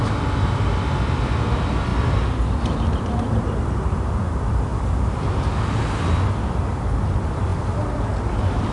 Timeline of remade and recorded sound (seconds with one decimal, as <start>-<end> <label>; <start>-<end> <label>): 0.0-8.7 recorded